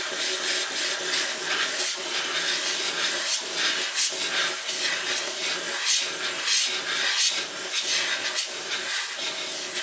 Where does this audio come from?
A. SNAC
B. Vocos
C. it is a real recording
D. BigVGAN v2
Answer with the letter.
C